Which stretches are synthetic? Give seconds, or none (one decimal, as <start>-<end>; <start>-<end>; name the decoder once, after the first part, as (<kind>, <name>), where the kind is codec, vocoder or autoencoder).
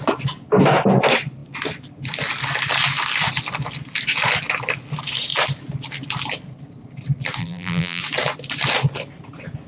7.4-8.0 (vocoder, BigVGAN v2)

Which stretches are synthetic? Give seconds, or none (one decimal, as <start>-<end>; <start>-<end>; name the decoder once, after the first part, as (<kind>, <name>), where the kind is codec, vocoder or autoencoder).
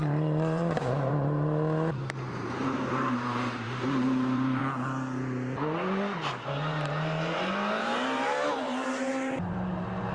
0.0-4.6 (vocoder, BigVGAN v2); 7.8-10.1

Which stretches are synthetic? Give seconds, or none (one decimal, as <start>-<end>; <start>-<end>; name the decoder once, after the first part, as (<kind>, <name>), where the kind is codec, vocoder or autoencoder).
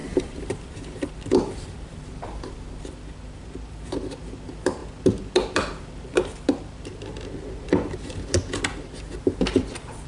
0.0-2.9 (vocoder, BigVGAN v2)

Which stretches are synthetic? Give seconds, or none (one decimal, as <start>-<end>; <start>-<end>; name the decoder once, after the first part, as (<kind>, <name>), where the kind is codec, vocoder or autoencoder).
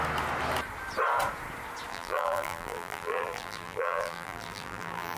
1.9-5.2 (vocoder, BigVGAN v2)